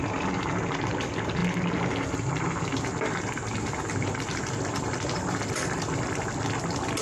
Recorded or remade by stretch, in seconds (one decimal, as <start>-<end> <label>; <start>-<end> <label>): 0.0-7.0 recorded